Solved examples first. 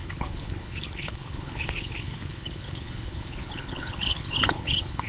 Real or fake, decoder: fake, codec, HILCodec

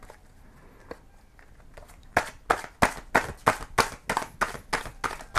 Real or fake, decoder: real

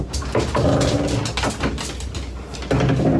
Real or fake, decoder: real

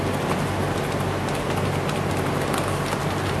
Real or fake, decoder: real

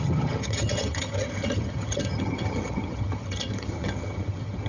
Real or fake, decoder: fake, vocoder, HiFi-GAN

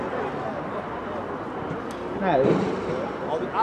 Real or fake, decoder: real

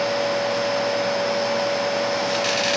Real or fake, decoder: real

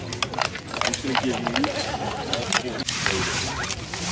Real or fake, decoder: real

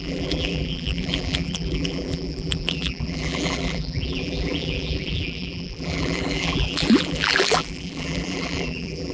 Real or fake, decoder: fake, vocoder, BigVGAN v2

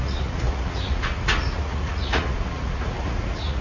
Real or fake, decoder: fake, vocoder, Vocos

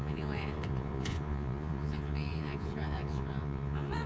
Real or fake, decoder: fake, vocoder, Vocos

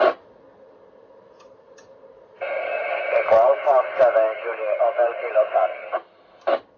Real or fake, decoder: real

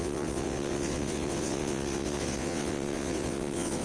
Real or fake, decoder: fake, vocoder, WaveNeXt